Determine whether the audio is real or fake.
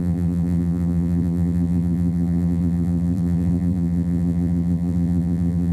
fake